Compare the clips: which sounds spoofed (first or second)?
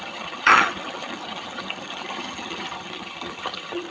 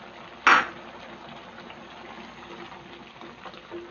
first